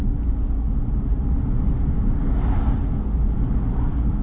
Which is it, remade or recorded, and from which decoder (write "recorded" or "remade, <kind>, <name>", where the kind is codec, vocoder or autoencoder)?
recorded